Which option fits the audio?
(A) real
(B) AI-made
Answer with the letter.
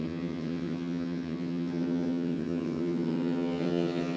B